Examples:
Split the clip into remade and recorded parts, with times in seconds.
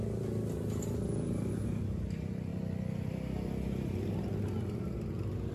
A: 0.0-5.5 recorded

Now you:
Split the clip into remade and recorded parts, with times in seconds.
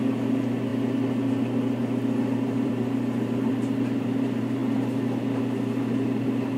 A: 0.0-6.6 remade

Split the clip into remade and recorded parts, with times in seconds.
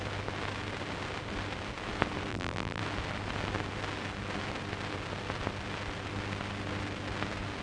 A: 0.0-2.3 recorded; 2.3-2.8 remade; 2.8-7.6 recorded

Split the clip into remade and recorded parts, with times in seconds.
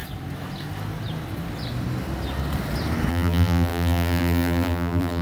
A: 0.0-3.1 recorded; 3.1-5.2 remade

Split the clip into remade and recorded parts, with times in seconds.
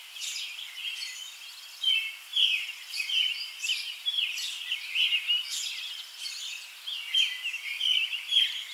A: 0.0-2.3 recorded; 2.3-5.6 remade; 5.6-8.7 recorded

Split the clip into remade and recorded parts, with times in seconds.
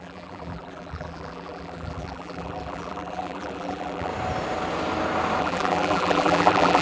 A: 0.0-4.1 remade; 4.1-5.4 recorded; 5.4-6.8 remade